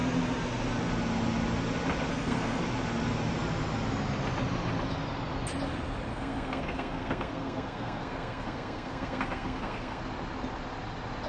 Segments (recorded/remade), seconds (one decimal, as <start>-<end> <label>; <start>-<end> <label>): 0.0-2.1 recorded; 2.1-2.6 remade; 2.6-6.1 recorded; 6.1-10.0 remade; 10.0-11.3 recorded